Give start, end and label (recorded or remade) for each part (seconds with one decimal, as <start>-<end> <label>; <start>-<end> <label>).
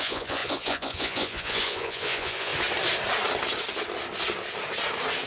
0.0-2.5 remade; 2.5-5.3 recorded